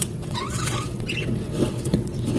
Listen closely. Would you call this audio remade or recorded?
remade